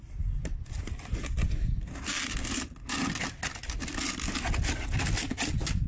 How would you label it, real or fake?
real